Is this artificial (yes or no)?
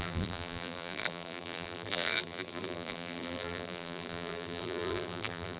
yes